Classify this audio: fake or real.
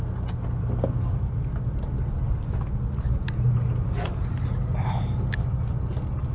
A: real